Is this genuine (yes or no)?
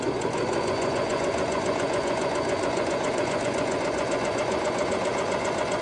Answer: no